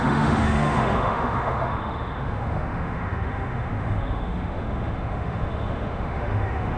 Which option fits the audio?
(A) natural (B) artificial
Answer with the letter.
B